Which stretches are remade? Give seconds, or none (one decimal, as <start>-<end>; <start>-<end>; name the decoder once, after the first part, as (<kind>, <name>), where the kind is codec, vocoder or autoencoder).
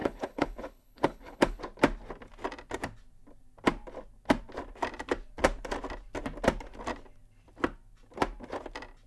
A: 0.0-1.6 (codec, HILCodec)